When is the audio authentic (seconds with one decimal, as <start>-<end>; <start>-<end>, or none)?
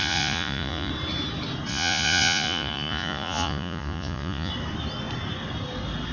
0.9-1.7; 4.5-6.1